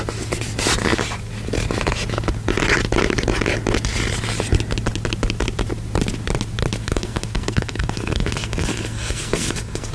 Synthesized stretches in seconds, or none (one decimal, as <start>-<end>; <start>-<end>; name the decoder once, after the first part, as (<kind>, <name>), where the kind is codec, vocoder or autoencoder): 6.8-9.9 (codec, SNAC)

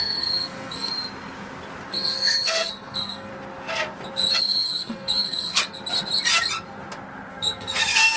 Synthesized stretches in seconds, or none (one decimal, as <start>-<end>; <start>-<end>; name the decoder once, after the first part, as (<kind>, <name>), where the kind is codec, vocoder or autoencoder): 0.0-0.9 (codec, SNAC); 1.9-3.3; 4.4-5.6; 7.3-8.2

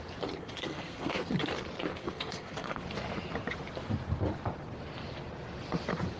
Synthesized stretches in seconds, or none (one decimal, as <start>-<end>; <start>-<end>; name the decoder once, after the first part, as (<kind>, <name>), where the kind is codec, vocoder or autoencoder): 0.4-1.3 (codec, SNAC); 2.0-2.8

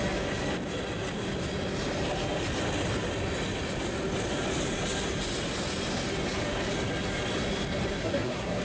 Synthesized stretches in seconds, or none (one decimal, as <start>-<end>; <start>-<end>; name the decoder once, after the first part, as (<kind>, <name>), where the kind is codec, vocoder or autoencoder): 7.9-8.6 (codec, SNAC)